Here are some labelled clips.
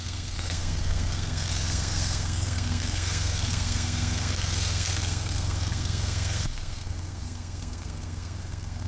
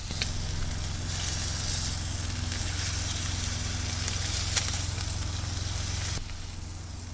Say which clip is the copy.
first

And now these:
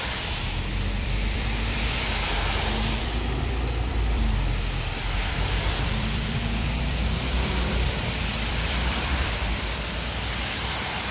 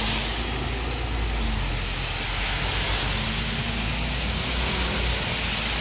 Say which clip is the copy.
first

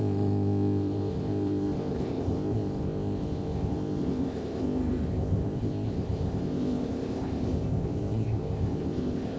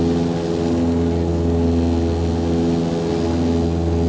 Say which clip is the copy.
first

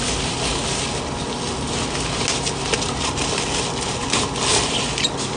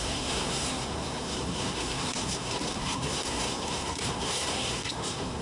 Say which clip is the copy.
second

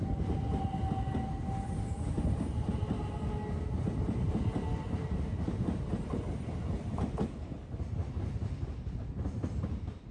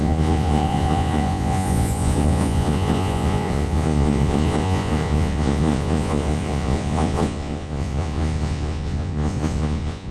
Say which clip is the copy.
second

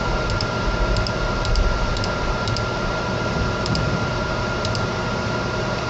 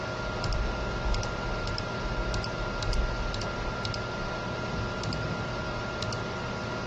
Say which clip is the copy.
first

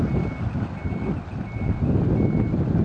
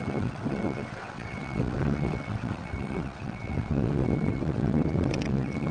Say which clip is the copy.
second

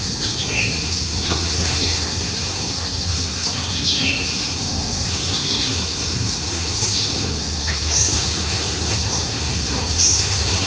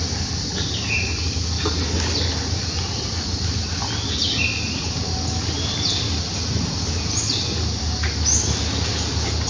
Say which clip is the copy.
first